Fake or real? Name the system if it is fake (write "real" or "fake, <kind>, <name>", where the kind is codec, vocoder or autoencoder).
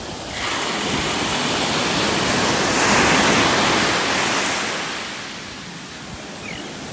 real